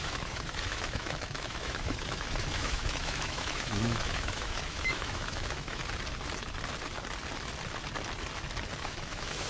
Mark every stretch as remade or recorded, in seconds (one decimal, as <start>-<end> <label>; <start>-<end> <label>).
0.0-5.8 remade; 5.8-8.8 recorded; 8.8-9.5 remade

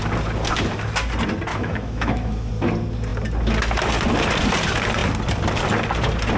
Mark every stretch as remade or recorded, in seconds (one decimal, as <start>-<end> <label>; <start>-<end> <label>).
0.0-1.5 recorded; 1.5-2.5 remade; 2.5-6.4 recorded

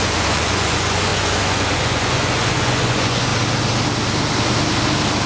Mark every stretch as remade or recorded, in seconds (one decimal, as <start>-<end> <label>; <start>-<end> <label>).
0.0-3.3 remade; 3.3-5.3 recorded

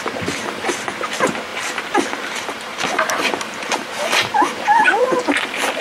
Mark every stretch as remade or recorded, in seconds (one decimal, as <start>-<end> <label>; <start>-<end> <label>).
0.0-1.5 recorded; 1.5-5.0 remade; 5.0-5.8 recorded

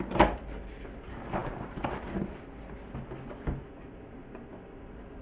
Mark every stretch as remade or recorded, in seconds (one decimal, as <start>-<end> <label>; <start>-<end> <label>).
0.0-5.2 recorded

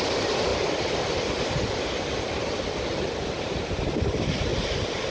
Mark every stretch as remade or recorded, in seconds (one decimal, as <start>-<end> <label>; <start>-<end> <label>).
0.0-5.1 recorded